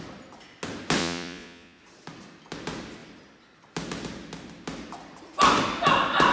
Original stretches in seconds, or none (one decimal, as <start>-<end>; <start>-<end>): 0.0-1.0; 1.8-6.3